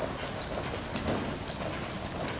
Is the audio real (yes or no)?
yes